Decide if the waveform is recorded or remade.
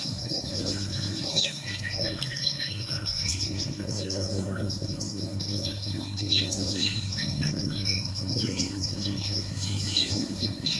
remade